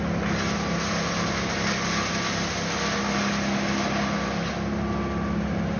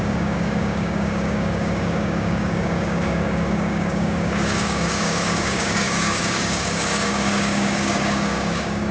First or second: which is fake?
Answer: second